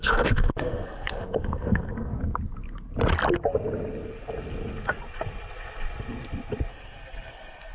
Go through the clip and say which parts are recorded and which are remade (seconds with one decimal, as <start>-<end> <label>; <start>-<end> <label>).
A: 0.0-2.1 remade; 2.1-6.7 recorded; 6.7-7.7 remade